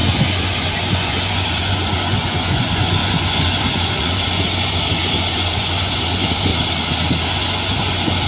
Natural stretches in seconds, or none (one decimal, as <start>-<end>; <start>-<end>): 6.5-7.3